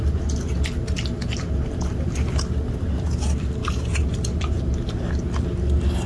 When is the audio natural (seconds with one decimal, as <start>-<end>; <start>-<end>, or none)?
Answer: 0.0-6.1